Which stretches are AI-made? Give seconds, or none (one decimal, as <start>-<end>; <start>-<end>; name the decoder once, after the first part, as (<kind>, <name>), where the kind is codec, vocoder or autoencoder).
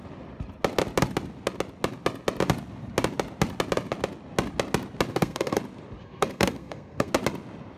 5.1-5.6 (codec, SNAC); 6.0-7.1